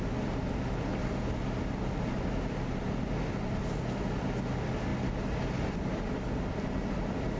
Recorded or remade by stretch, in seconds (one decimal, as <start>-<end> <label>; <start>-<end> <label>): 0.0-7.4 recorded